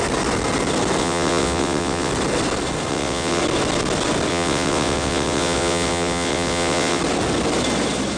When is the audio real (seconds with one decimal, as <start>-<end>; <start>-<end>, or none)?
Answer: 0.0-1.0; 2.1-2.9; 3.4-4.3; 7.0-8.2